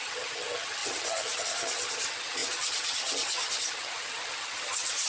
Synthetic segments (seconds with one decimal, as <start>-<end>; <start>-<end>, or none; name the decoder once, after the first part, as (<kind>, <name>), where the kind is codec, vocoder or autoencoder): 0.0-5.1 (vocoder, HiFi-GAN)